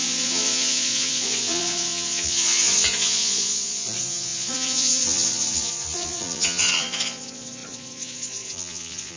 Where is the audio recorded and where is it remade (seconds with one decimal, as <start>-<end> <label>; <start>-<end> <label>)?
0.0-9.2 remade